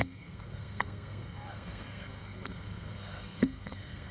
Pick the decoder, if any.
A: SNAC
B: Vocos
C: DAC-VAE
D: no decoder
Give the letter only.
A